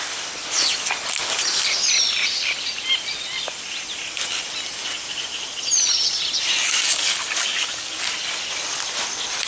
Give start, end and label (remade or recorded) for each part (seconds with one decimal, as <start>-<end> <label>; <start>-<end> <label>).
0.0-6.6 recorded; 6.6-8.1 remade; 8.1-9.5 recorded

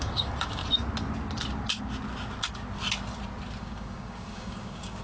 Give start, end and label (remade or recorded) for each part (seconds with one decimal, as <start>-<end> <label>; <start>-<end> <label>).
0.0-0.6 remade; 0.6-3.6 recorded; 3.6-5.0 remade

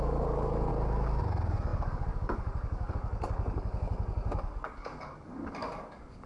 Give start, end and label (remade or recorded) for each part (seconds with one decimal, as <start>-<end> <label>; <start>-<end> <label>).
0.0-0.7 remade; 0.7-1.2 recorded; 1.2-6.3 remade

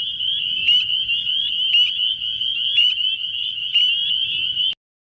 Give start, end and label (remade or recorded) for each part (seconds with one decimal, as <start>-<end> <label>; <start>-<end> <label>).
0.0-5.1 recorded

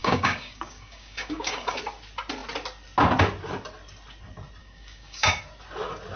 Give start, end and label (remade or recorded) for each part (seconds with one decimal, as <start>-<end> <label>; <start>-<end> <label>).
0.0-1.8 remade; 1.8-4.6 recorded; 4.6-5.4 remade; 5.4-6.2 recorded

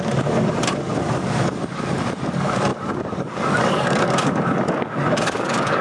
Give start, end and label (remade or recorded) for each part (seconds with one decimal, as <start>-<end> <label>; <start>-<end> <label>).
0.0-5.8 remade

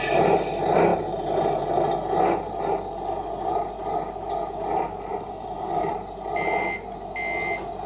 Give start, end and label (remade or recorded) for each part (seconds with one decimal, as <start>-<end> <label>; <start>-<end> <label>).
0.0-5.1 recorded; 5.1-5.9 remade; 5.9-7.9 recorded